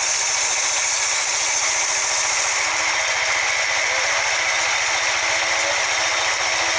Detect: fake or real real